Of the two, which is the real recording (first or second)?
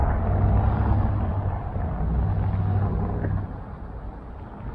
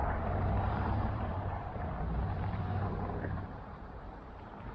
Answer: first